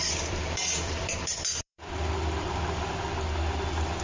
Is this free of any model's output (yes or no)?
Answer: no